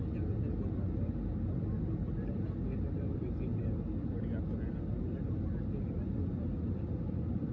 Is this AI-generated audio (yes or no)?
no